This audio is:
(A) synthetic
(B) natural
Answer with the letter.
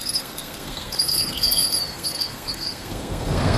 A